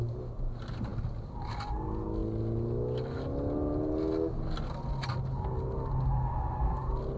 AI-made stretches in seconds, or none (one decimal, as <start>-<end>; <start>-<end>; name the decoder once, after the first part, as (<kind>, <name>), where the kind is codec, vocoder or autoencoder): 0.9-1.5 (vocoder, BigVGAN v2)